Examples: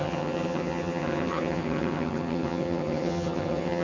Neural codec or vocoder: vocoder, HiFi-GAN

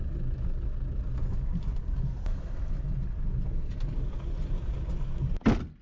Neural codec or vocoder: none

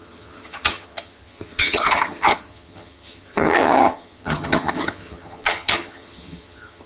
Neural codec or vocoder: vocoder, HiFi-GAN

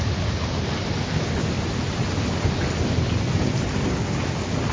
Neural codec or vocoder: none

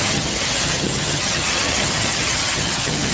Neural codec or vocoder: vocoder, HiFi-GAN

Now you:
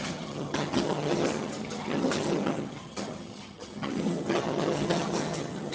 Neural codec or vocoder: vocoder, HiFi-GAN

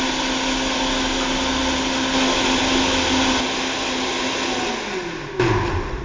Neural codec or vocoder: none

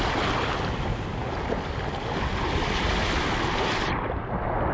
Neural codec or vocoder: none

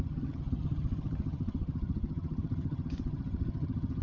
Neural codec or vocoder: vocoder, HiFi-GAN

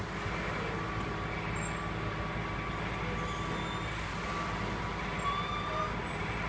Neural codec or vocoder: none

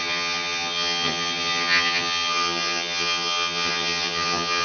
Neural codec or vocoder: vocoder, HiFi-GAN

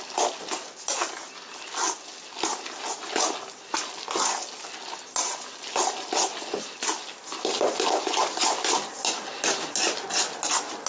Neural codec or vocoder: none